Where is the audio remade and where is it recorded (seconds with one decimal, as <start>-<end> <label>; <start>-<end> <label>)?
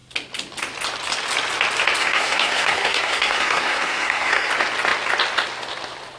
0.0-2.0 recorded; 2.0-4.5 remade; 4.5-6.2 recorded